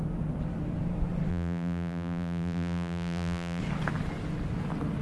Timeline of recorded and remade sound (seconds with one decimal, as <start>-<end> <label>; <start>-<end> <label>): 0.0-1.3 recorded; 1.3-3.6 remade; 3.6-5.0 recorded